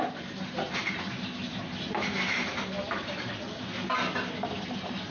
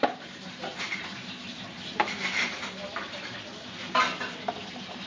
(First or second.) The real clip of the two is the first